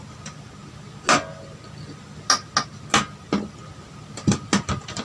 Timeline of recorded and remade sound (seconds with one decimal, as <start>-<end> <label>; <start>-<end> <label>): 0.0-5.0 recorded